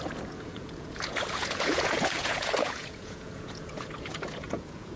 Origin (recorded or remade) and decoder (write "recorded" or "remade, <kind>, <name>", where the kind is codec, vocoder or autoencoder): remade, vocoder, Vocos